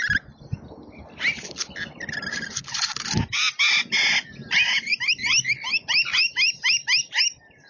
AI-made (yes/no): no